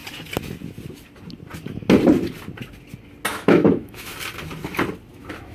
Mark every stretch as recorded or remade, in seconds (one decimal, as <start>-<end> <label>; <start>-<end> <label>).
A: 0.0-3.3 recorded; 3.3-4.1 remade; 4.1-5.1 recorded; 5.1-5.5 remade